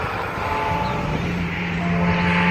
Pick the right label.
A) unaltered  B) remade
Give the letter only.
A